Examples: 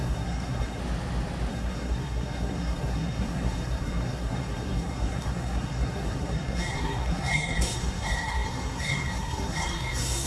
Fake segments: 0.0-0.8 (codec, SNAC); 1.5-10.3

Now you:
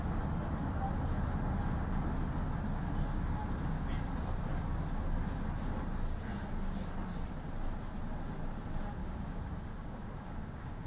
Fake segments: 9.0-10.9 (codec, DAC)

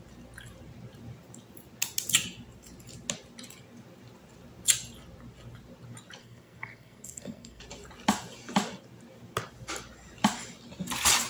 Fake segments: 6.2-7.6 (codec, SNAC)

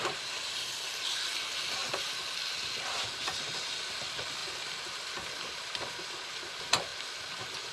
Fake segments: none

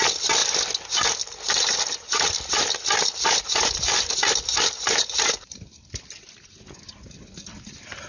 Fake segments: none

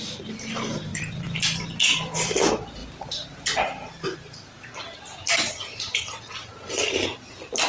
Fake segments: 0.9-1.4 (vocoder, BigVGAN v2); 2.8-6.5